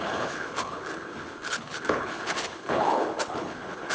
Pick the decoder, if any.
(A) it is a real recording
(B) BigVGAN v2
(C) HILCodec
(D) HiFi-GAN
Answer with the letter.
C